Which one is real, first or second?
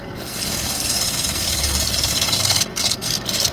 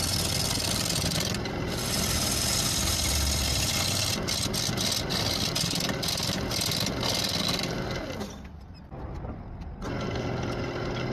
second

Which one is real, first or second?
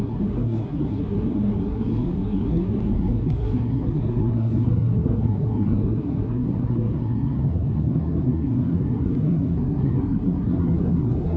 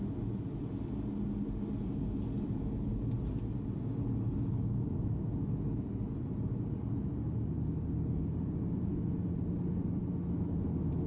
second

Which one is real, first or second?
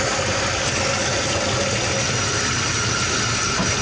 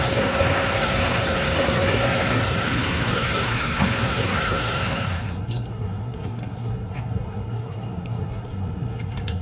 first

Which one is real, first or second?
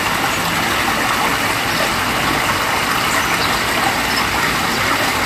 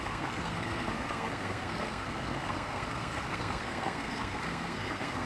first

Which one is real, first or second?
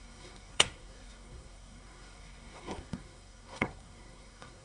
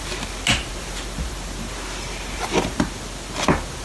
second